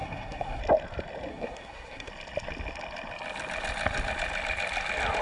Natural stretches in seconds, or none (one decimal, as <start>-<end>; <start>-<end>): 0.6-1.3; 2.1-5.2